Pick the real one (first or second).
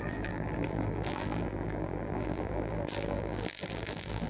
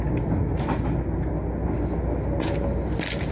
second